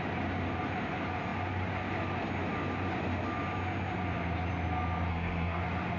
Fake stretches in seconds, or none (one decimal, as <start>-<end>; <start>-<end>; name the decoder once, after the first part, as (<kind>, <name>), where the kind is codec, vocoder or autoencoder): 5.1-5.6 (codec, SNAC)